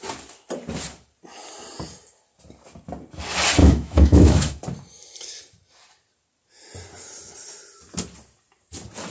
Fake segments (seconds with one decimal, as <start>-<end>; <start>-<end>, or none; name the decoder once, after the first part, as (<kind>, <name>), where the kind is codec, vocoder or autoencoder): 3.6-4.6 (autoencoder, DAC-VAE)